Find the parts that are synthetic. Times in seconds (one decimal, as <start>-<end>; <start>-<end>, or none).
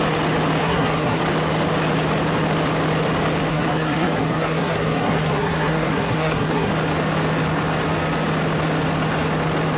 0.6-1.2; 3.5-6.7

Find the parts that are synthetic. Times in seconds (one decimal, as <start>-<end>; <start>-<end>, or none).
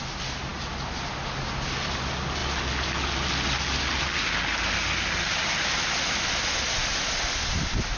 none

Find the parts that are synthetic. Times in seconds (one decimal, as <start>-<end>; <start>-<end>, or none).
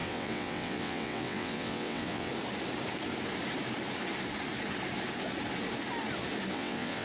0.0-2.3; 6.5-7.0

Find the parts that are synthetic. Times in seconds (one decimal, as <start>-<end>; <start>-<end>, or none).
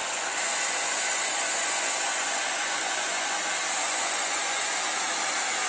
0.0-3.4; 3.8-4.7